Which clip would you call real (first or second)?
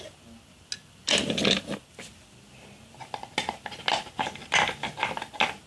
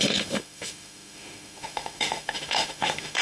first